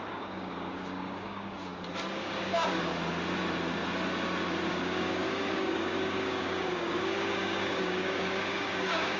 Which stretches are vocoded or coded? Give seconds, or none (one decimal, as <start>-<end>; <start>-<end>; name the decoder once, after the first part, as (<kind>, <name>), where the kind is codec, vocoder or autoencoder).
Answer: 0.0-1.7 (codec, DAC); 2.2-2.9; 4.7-9.2